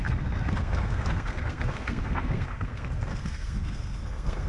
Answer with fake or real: fake